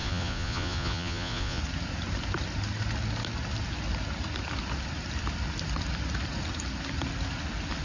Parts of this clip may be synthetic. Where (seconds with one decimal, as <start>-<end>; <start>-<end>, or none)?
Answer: 0.0-1.6